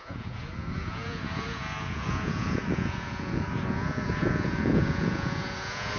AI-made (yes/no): yes